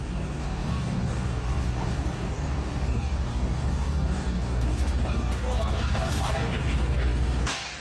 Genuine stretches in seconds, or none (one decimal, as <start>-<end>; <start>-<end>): none

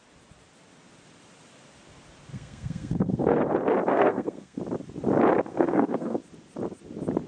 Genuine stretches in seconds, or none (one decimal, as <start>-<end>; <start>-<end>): 0.0-2.3; 3.5-3.9; 4.6-5.5; 6.2-7.3

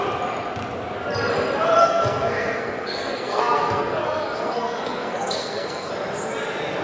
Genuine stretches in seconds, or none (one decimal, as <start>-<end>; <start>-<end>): 0.0-1.8; 5.9-6.8

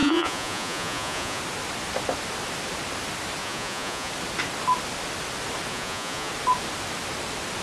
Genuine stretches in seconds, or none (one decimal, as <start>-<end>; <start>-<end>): 1.4-3.4; 4.1-5.7; 6.3-7.6

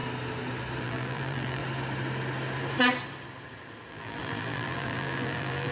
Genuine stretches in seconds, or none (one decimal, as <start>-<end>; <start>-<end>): 0.0-0.8; 1.6-3.9